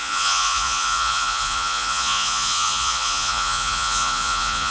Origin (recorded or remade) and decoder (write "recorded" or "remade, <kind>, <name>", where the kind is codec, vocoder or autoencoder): remade, vocoder, Vocos